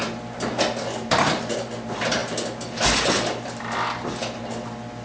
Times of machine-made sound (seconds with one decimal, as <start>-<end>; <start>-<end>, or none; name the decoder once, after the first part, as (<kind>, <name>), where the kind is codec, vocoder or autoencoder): none